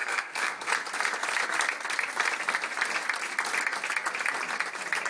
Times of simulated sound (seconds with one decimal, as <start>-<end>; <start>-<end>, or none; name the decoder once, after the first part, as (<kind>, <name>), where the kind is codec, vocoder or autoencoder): 0.0-0.7 (codec, SNAC)